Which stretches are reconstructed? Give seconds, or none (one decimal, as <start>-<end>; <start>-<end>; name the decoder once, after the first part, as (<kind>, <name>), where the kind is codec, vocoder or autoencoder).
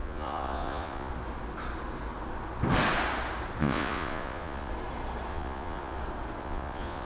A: 0.0-1.1 (vocoder, Vocos); 3.6-4.7; 5.3-6.0; 6.4-7.1